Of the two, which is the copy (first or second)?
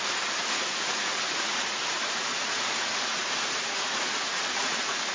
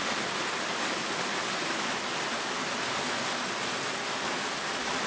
first